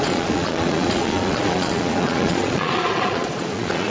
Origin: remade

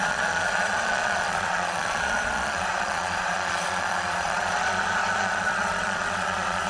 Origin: remade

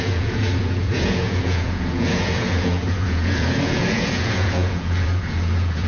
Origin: remade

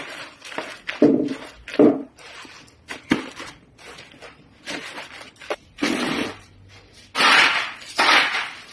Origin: recorded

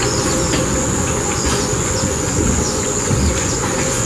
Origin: remade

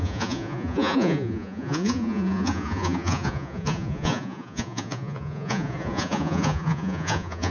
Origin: remade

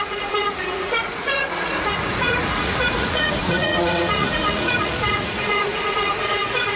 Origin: remade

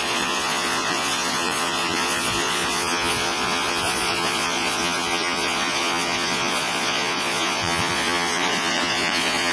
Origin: remade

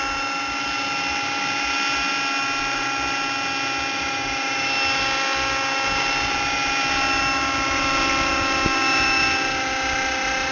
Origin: recorded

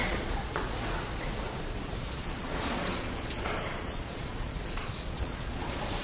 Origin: remade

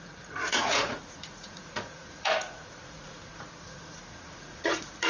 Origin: remade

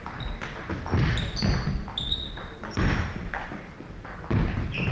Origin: recorded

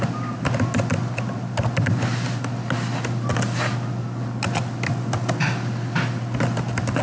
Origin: recorded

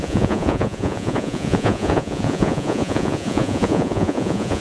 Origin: remade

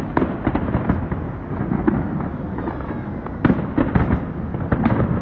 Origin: recorded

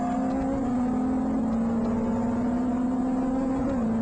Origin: recorded